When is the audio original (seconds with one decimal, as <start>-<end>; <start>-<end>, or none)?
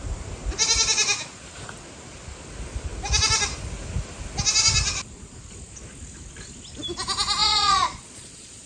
0.0-7.4